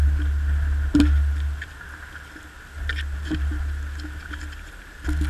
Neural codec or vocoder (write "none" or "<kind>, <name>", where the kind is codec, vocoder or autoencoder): none